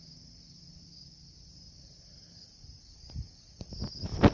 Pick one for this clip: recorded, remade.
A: recorded